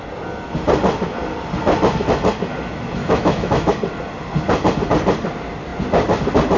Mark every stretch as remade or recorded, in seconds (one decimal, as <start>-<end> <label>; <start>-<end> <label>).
0.0-3.0 recorded; 3.0-3.7 remade; 3.7-6.6 recorded